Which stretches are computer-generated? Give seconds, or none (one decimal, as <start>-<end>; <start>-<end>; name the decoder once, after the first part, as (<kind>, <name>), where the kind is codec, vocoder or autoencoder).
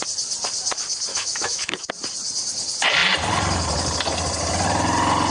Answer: 1.1-1.9 (autoencoder, DAC-VAE)